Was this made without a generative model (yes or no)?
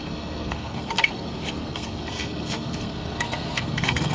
no